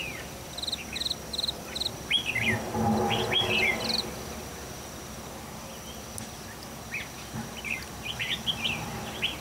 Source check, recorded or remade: recorded